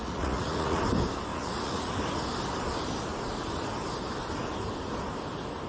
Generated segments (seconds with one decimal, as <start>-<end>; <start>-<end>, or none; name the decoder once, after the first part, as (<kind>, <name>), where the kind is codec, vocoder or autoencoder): 0.0-0.8 (vocoder, Vocos); 1.3-1.9